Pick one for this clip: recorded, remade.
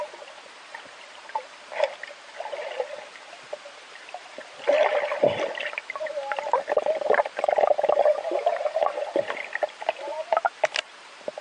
recorded